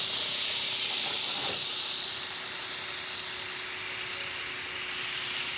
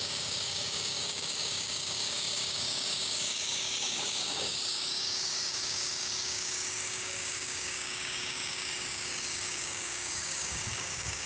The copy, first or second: second